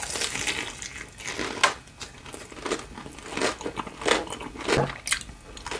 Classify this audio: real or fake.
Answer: real